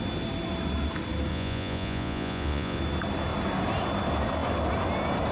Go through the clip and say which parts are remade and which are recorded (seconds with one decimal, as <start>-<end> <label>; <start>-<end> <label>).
0.0-1.3 recorded; 1.3-2.8 remade; 2.8-5.3 recorded